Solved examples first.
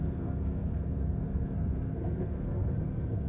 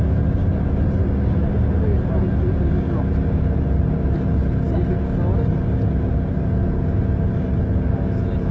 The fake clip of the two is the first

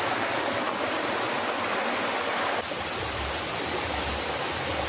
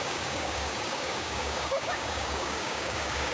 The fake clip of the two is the second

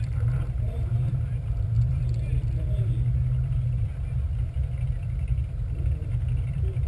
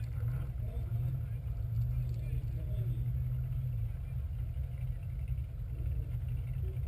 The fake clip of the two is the first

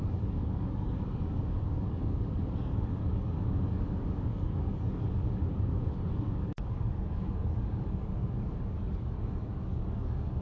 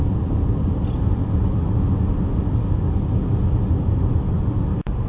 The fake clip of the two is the first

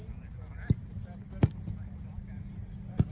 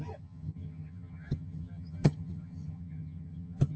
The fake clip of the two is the second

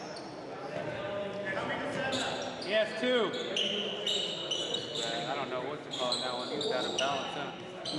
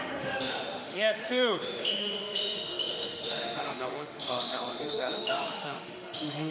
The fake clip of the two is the second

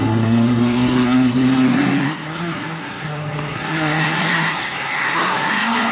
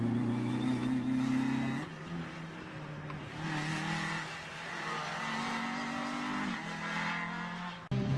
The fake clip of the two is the first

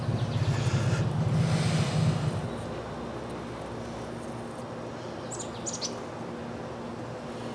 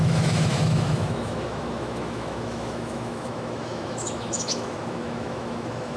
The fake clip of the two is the second